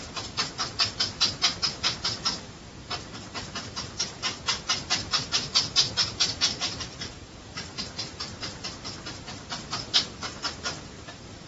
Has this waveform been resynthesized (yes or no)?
yes